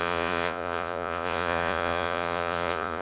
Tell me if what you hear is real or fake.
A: fake